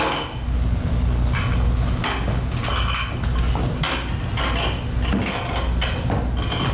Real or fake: real